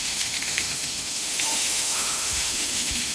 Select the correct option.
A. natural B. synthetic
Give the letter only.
B